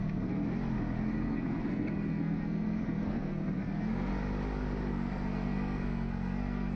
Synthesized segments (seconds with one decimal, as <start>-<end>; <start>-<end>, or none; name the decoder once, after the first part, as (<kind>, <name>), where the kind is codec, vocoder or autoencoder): 0.0-0.4 (codec, SNAC); 1.0-4.1; 4.9-6.8

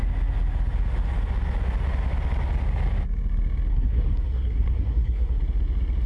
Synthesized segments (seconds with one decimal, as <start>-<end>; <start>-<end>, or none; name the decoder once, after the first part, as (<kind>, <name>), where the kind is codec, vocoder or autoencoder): 3.7-5.4 (codec, SNAC)

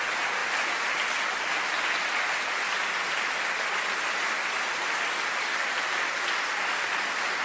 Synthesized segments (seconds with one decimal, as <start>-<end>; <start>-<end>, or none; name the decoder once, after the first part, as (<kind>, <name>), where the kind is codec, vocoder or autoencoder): none